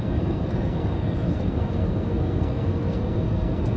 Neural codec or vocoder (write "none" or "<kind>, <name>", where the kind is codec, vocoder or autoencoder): codec, SNAC